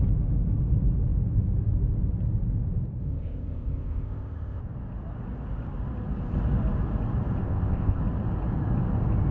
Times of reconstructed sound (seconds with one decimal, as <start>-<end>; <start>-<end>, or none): 3.0-4.6; 7.4-8.0